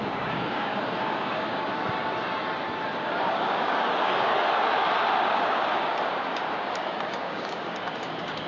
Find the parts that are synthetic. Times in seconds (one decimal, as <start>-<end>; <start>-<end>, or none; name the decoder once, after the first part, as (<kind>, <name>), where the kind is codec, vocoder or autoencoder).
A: 0.0-1.8 (codec, DAC); 3.0-4.3; 5.2-8.5